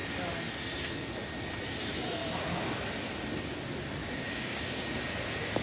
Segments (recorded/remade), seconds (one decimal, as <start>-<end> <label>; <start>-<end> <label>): 0.0-4.0 recorded; 4.0-4.8 remade; 4.8-5.6 recorded